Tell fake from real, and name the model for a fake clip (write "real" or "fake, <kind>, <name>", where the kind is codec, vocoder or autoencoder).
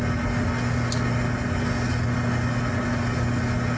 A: real